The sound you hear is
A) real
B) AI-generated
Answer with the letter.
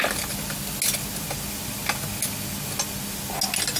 A